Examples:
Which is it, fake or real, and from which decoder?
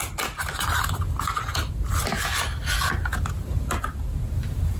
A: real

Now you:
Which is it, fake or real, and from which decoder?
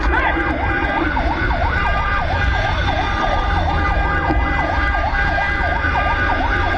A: fake, vocoder, BigVGAN v2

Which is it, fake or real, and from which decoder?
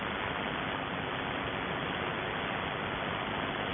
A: real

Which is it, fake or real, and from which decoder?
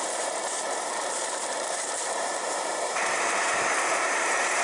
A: fake, vocoder, BigVGAN v2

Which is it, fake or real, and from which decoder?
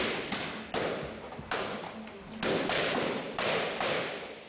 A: fake, vocoder, BigVGAN v2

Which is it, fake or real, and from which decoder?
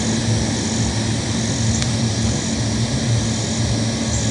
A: real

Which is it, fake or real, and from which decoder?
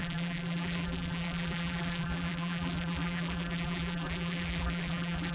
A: fake, vocoder, BigVGAN v2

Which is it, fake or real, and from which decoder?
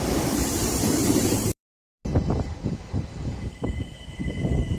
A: fake, vocoder, BigVGAN v2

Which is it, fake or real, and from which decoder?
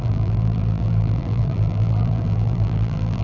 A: fake, vocoder, BigVGAN v2